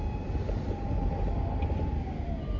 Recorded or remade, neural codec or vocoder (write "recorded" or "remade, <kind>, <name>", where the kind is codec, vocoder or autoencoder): recorded